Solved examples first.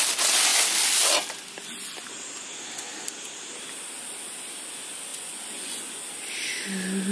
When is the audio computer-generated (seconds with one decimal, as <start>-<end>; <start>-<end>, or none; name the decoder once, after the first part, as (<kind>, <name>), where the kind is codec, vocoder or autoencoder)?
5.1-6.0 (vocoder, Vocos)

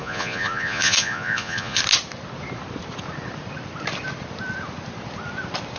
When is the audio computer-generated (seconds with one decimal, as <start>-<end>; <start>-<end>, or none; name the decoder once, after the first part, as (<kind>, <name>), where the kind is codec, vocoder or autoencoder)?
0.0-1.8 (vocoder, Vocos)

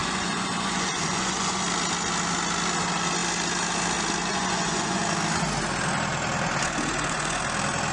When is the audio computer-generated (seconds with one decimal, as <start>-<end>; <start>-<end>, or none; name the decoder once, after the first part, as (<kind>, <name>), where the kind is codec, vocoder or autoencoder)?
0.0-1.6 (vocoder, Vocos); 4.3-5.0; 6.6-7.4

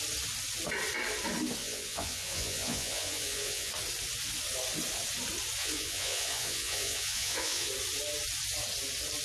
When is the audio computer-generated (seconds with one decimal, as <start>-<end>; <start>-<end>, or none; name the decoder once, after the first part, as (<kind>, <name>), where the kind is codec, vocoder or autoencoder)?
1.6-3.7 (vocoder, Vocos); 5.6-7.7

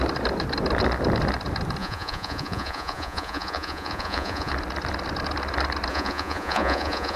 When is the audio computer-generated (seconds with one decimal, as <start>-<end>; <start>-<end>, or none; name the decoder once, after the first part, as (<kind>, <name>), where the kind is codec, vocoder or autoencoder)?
1.8-4.5 (vocoder, Vocos); 5.9-7.2